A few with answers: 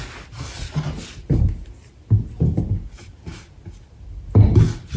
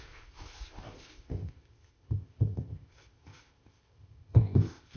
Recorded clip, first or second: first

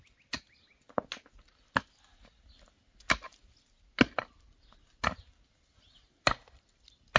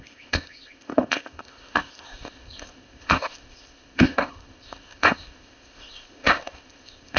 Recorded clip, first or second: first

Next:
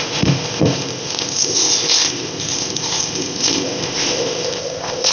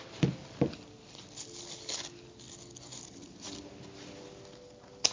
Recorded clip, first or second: second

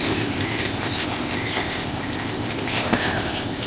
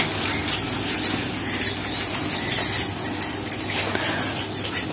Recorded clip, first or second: second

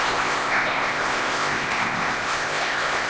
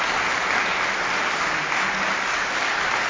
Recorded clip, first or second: second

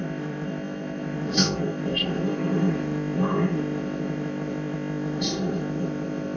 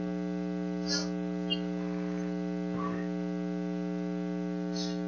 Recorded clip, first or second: second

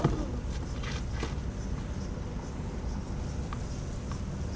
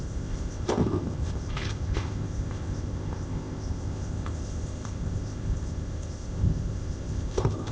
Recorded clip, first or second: first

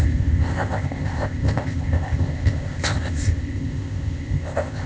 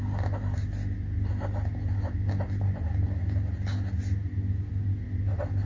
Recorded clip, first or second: second